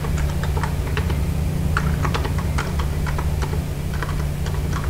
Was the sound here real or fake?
real